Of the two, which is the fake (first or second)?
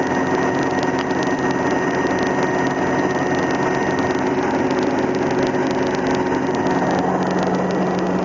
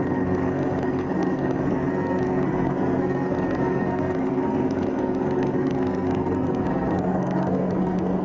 second